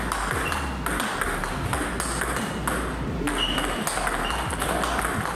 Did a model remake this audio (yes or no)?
no